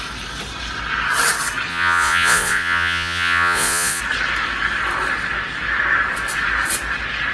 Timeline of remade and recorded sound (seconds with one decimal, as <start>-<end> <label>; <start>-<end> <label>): 0.0-1.7 recorded; 1.7-4.0 remade; 4.0-7.3 recorded